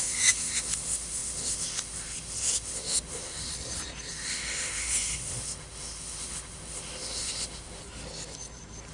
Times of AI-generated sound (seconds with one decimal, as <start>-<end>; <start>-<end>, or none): 0.0-3.5; 4.1-7.8